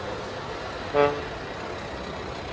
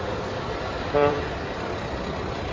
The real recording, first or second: first